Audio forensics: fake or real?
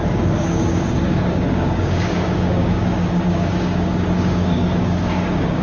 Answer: fake